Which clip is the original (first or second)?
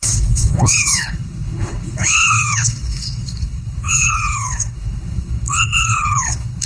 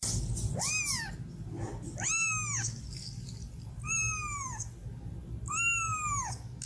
second